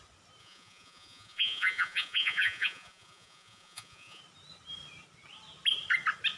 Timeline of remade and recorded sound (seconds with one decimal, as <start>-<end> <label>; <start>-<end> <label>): 0.0-0.4 recorded; 0.4-4.2 remade; 4.2-6.4 recorded